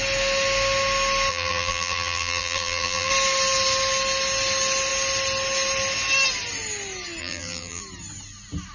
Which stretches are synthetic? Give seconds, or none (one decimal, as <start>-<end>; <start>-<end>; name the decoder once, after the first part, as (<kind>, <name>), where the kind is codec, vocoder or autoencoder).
1.3-3.1 (vocoder, BigVGAN v2); 7.2-7.8